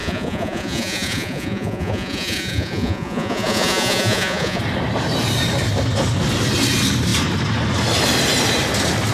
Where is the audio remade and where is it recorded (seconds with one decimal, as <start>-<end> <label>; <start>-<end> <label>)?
0.0-4.6 remade; 4.6-9.1 recorded